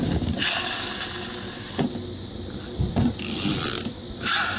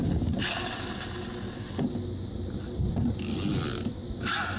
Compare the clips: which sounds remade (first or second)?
first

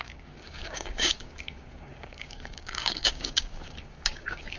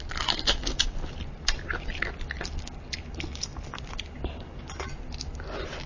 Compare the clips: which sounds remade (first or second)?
first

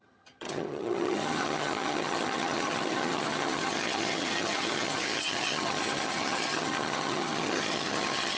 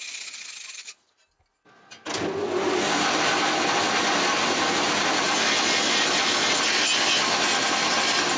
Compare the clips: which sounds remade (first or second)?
first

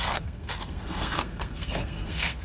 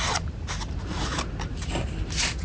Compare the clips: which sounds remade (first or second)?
first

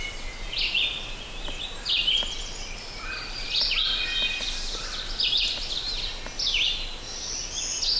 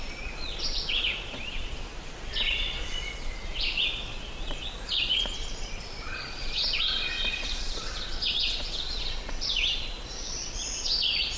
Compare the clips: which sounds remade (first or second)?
second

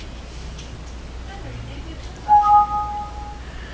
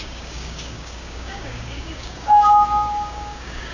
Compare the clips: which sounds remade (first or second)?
second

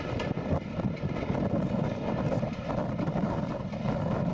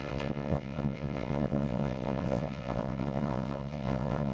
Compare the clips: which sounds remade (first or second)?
second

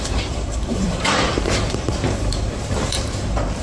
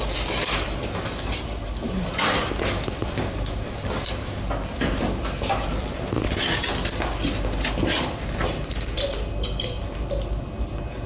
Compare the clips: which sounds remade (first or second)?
first